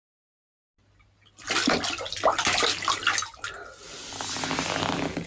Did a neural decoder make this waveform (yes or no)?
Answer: no